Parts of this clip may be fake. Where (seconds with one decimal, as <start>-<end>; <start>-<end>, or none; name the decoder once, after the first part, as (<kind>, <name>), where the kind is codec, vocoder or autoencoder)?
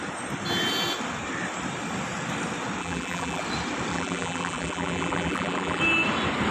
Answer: 2.8-3.4 (vocoder, BigVGAN v2); 3.9-5.8